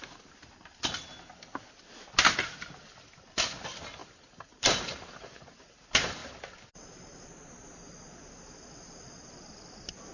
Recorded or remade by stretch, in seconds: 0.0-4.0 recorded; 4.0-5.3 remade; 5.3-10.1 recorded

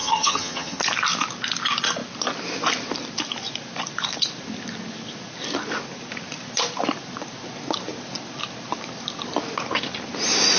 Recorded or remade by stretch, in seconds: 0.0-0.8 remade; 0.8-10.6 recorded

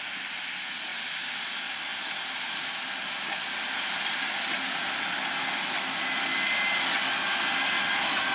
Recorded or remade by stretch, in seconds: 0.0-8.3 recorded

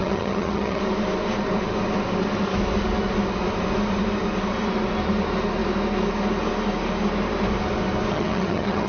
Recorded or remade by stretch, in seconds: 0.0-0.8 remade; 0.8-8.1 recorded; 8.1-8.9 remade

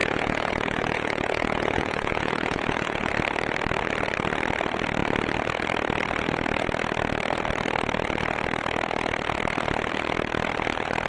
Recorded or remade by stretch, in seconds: 0.0-3.1 remade; 3.1-11.1 recorded

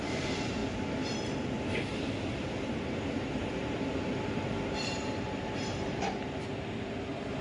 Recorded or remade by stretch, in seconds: 0.0-0.6 remade; 0.6-2.7 recorded; 2.7-7.4 remade

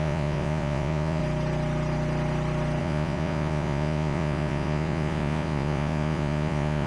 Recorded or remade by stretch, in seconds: 0.0-1.2 remade; 1.2-2.8 recorded; 2.8-6.9 remade

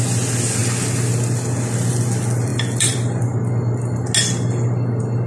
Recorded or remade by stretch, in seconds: 0.0-2.5 recorded; 2.5-3.2 remade; 3.2-5.3 recorded